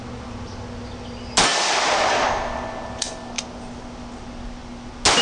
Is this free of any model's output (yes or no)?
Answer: yes